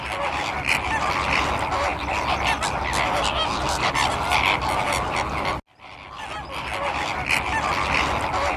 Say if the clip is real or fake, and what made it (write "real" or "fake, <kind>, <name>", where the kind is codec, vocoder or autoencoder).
real